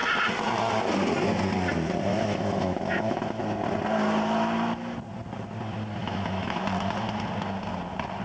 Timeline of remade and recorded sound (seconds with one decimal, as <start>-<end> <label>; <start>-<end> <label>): 0.0-2.1 recorded; 2.1-3.4 remade; 3.4-6.0 recorded; 6.0-6.6 remade; 6.6-8.2 recorded